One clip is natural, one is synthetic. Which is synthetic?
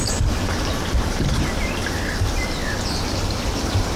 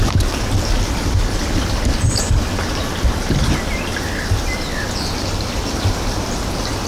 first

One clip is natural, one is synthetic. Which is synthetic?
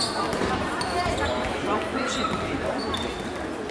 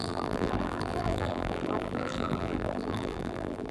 second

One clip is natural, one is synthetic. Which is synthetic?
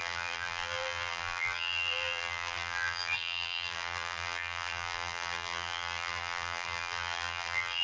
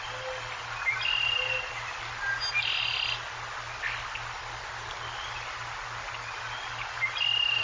first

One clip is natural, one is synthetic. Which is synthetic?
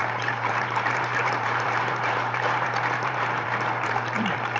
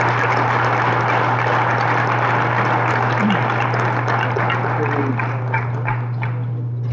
first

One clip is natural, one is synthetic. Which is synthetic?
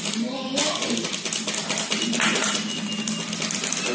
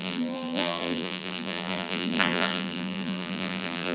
second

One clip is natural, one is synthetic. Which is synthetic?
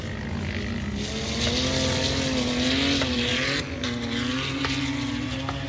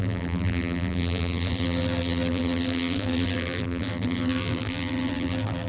second